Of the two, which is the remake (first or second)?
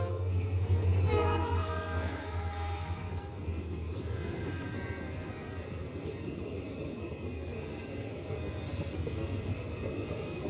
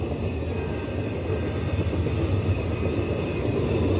first